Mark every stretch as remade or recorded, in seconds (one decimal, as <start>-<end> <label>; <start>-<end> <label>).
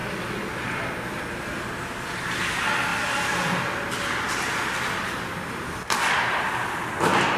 0.0-7.4 recorded